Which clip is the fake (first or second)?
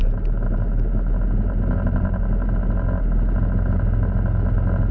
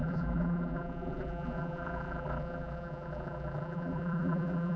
second